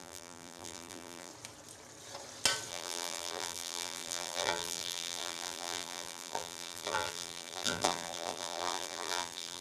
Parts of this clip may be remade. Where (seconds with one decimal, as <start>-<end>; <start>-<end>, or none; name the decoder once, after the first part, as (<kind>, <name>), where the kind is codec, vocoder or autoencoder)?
0.0-1.3 (vocoder, BigVGAN v2); 2.7-9.6